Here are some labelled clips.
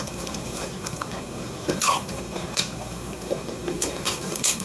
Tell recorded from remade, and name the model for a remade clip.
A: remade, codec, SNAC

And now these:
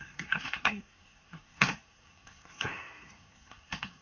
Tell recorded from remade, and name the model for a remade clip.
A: remade, codec, SNAC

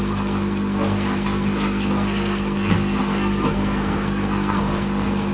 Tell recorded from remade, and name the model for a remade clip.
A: remade, codec, SNAC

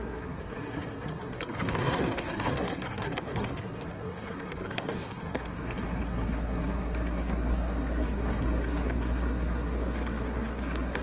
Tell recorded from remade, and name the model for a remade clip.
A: remade, codec, SNAC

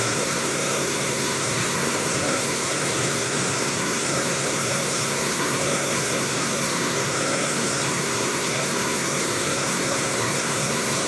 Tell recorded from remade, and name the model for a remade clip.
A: remade, codec, SNAC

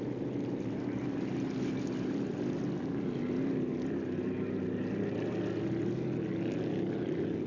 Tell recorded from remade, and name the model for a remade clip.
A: recorded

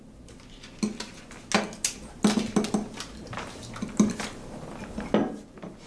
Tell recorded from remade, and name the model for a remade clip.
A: recorded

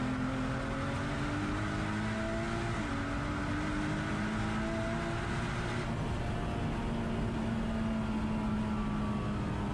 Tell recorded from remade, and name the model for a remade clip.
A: recorded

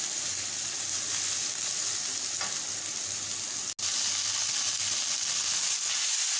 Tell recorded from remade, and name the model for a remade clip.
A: recorded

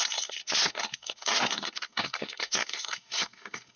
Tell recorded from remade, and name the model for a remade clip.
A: remade, codec, SNAC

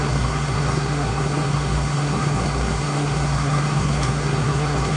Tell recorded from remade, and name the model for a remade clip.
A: remade, codec, SNAC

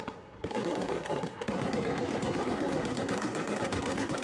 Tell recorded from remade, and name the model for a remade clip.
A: remade, codec, SNAC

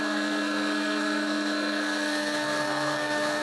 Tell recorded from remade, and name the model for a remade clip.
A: remade, codec, SNAC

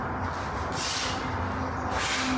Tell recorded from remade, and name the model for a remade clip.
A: recorded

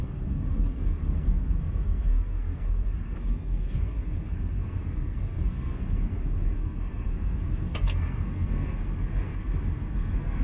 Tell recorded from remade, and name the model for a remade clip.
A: remade, codec, SNAC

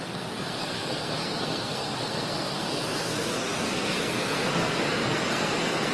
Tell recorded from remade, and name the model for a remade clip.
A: remade, codec, SNAC